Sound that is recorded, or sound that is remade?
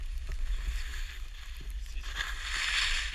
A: recorded